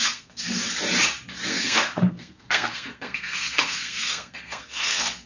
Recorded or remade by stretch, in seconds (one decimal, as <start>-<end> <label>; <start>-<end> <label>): 0.0-0.6 remade; 0.6-1.5 recorded; 1.5-5.3 remade